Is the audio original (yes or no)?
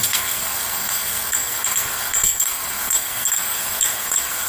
no